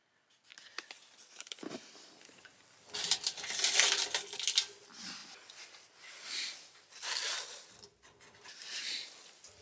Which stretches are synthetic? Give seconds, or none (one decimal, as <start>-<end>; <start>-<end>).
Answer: none